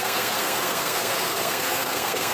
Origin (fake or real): fake